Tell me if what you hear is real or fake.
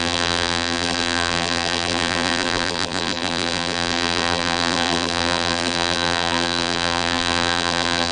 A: fake